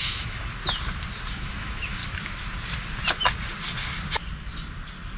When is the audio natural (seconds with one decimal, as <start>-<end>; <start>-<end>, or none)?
0.5-1.3; 2.0-5.2